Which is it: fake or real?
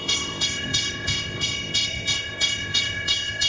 fake